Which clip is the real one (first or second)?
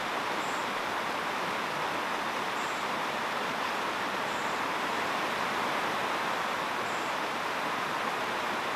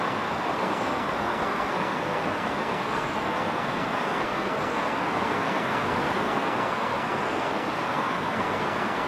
first